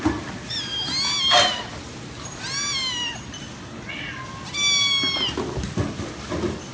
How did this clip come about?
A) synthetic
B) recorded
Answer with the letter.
B